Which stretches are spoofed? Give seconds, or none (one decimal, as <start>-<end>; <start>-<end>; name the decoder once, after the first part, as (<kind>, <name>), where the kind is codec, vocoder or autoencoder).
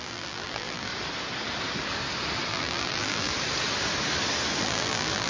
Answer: 0.0-0.9 (vocoder, BigVGAN v2); 2.5-3.3; 4.6-5.3